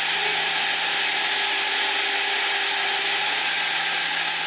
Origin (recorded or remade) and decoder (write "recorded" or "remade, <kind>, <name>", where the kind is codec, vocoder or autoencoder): recorded